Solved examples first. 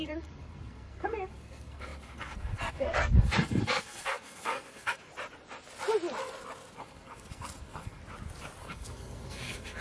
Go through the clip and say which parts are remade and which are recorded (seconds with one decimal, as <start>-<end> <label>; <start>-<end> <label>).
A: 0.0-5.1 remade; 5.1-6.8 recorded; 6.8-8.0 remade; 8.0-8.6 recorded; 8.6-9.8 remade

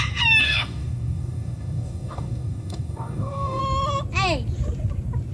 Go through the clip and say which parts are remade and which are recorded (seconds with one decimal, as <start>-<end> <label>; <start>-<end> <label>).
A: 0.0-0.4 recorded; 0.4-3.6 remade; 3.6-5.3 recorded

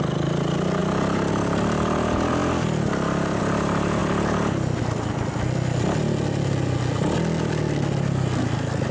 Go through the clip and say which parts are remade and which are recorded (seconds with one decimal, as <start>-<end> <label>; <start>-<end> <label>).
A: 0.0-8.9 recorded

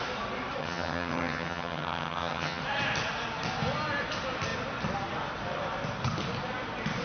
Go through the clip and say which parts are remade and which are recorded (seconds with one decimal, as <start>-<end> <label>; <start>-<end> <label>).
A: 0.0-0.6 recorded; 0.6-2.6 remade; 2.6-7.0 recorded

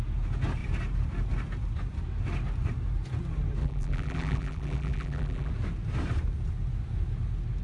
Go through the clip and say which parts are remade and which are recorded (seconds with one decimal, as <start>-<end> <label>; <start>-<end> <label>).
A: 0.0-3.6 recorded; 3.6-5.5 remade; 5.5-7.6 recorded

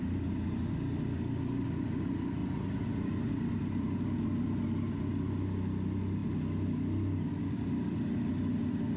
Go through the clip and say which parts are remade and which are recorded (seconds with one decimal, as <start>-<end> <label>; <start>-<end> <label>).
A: 0.0-9.0 recorded

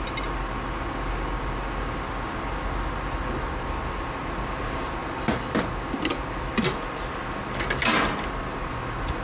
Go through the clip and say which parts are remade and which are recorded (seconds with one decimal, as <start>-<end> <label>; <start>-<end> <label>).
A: 0.0-9.2 recorded

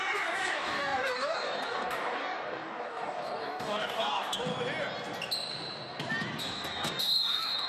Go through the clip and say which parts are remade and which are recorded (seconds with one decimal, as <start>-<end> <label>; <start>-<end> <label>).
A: 0.0-4.5 remade; 4.5-6.4 recorded; 6.4-7.7 remade